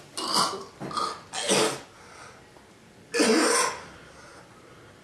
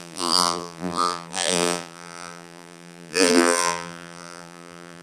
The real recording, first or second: first